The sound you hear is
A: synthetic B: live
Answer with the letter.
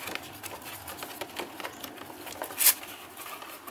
B